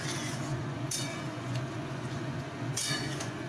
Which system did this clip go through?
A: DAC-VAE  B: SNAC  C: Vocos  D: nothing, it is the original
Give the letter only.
C